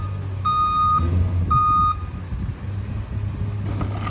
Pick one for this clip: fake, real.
real